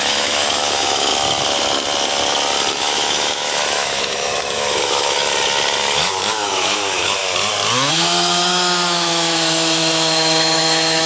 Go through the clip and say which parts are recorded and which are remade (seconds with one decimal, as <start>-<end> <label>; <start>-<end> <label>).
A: 0.0-1.1 remade; 1.1-2.8 recorded; 2.8-5.2 remade; 5.2-5.9 recorded; 5.9-7.2 remade; 7.2-7.9 recorded; 7.9-11.1 remade